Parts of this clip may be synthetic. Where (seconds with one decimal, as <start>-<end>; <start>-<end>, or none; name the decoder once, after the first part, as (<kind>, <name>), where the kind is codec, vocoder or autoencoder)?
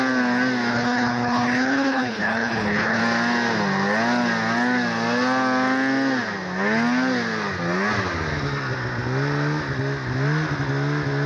0.7-3.0 (codec, HILCodec)